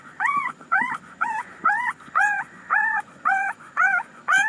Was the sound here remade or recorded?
remade